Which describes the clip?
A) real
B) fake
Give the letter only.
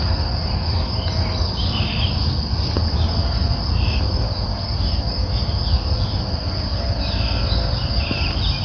A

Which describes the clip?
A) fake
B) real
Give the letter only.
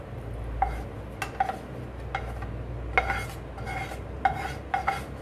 B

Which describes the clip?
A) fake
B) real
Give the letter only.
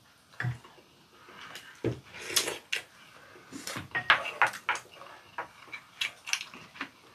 B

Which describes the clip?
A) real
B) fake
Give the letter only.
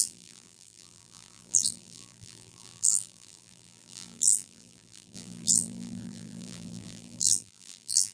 B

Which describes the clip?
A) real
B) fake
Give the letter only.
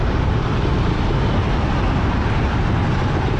B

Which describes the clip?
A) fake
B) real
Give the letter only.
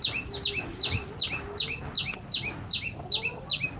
B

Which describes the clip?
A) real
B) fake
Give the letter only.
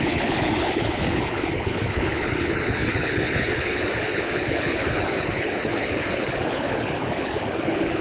B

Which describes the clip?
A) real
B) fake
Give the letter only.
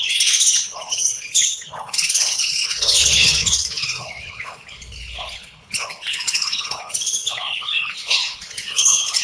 B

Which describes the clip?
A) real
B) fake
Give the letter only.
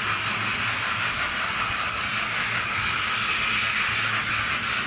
A